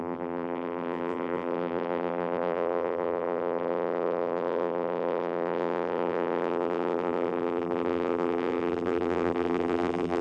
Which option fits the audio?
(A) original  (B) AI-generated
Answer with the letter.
B